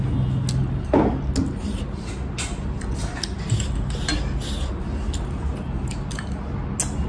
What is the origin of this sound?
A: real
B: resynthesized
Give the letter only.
A